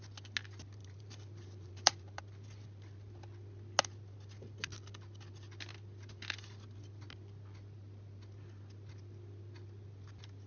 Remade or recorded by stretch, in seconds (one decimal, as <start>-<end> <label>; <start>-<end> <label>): 0.0-0.8 recorded; 0.8-2.2 remade; 2.2-10.5 recorded

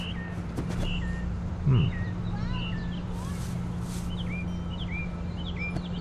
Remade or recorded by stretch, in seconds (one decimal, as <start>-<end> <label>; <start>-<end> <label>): 0.0-6.0 recorded

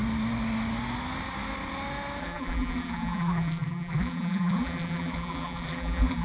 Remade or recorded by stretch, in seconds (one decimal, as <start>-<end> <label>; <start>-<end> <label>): 0.0-2.2 recorded; 2.2-6.2 remade

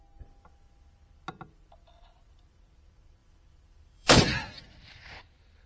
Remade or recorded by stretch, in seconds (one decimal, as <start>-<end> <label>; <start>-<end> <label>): 0.0-3.2 recorded; 3.2-4.2 remade; 4.2-5.7 recorded

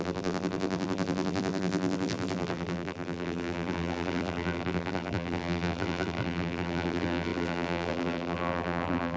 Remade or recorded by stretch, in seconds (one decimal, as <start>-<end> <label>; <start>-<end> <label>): 0.0-9.2 remade